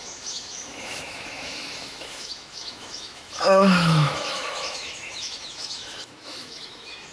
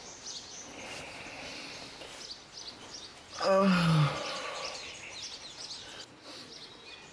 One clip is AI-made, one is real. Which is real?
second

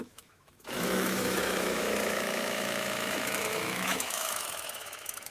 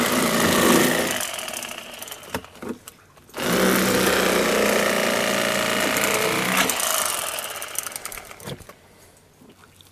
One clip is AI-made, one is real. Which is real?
second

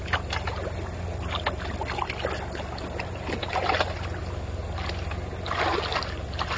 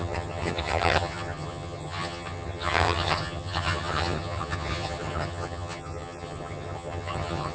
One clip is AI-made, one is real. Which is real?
first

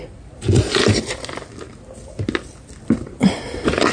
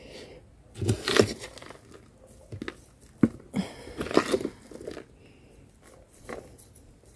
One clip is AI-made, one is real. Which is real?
second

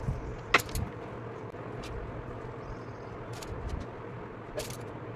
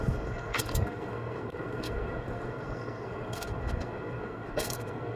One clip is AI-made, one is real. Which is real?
first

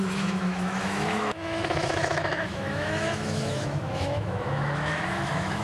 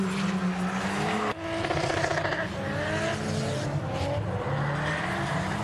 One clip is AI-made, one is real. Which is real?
second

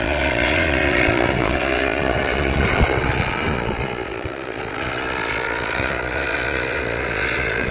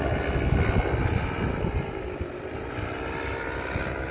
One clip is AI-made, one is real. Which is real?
second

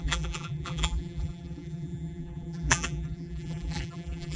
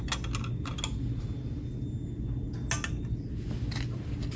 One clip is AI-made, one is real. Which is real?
second